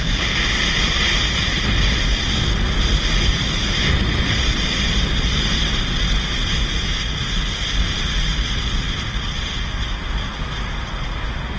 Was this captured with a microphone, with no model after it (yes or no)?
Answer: yes